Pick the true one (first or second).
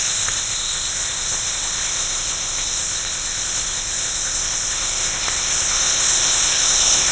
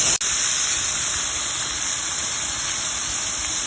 second